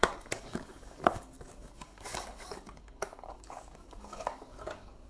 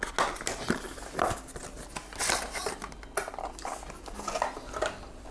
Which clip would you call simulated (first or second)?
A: first